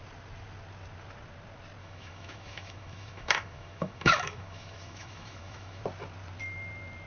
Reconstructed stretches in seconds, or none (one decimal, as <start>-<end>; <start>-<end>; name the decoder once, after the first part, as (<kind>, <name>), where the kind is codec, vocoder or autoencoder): 1.8-5.8 (autoencoder, DAC-VAE)